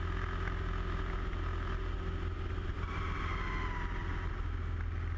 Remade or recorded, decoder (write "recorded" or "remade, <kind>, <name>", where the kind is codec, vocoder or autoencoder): recorded